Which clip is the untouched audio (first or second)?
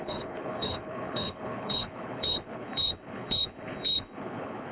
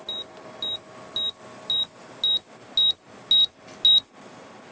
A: second